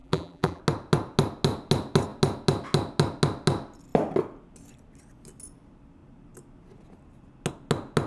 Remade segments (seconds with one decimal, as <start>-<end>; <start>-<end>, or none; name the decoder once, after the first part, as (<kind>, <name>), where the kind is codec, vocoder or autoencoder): 0.0-0.6 (vocoder, BigVGAN v2)